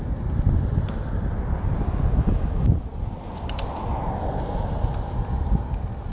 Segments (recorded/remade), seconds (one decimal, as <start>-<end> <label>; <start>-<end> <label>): 0.0-6.1 recorded